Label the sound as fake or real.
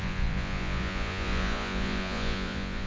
fake